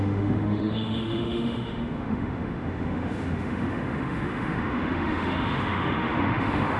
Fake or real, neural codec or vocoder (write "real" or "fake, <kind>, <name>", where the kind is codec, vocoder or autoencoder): fake, autoencoder, DAC-VAE